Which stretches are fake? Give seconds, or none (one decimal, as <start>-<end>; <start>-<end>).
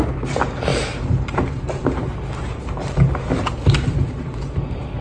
0.7-3.5